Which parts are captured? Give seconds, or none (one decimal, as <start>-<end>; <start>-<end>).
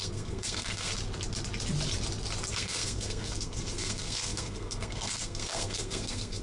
0.9-2.5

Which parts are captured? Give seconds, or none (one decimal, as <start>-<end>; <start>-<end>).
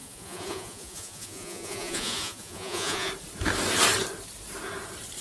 3.1-5.2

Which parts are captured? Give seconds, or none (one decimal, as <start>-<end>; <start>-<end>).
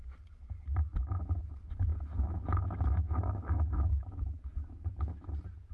0.0-1.9; 5.3-5.7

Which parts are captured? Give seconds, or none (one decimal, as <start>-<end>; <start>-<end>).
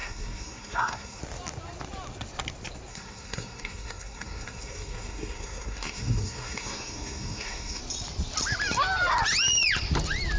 1.2-2.9; 7.8-10.4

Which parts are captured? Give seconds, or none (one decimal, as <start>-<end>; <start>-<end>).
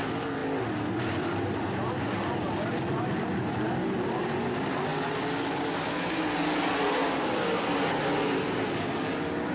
0.0-9.5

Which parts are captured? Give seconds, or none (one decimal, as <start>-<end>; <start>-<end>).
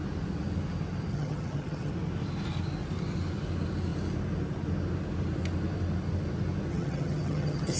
0.0-1.1; 1.9-6.7